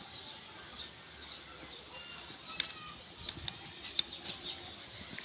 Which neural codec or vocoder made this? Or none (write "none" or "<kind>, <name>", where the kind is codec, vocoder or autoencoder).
none